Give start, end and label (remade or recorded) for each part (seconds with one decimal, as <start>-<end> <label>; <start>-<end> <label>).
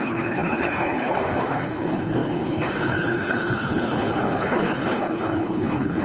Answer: 0.0-6.0 remade